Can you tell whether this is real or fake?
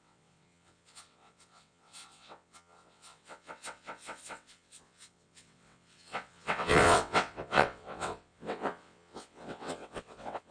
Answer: fake